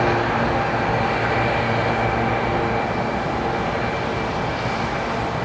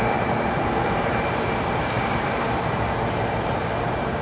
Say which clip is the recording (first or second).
first